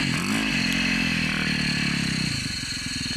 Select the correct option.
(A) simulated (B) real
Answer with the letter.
B